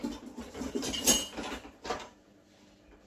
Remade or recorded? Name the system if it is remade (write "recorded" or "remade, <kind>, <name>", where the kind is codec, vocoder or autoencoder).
recorded